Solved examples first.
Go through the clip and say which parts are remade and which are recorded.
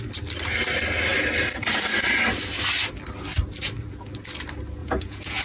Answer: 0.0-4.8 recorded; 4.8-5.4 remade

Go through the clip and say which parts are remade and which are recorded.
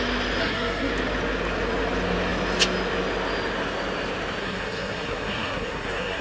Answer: 0.0-0.4 recorded; 0.4-0.9 remade; 0.9-4.4 recorded; 4.4-6.2 remade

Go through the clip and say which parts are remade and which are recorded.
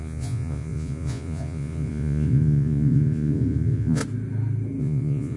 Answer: 0.0-4.0 remade; 4.0-4.8 recorded; 4.8-5.4 remade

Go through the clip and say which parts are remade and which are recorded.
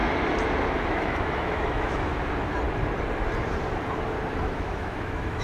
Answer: 0.0-0.7 recorded; 0.7-2.1 remade; 2.1-4.4 recorded; 4.4-5.4 remade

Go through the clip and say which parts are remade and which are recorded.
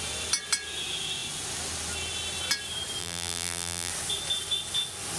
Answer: 0.0-3.0 recorded; 3.0-3.9 remade; 3.9-5.2 recorded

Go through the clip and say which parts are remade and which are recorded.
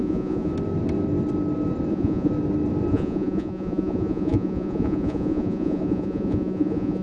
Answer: 0.0-0.5 remade; 0.5-1.9 recorded; 1.9-2.3 remade; 2.3-2.9 recorded; 2.9-7.0 remade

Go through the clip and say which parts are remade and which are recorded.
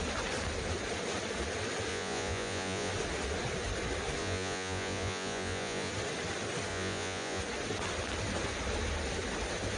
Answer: 0.0-1.9 recorded; 1.9-2.9 remade; 2.9-4.2 recorded; 4.2-5.9 remade; 5.9-6.7 recorded; 6.7-7.4 remade; 7.4-9.8 recorded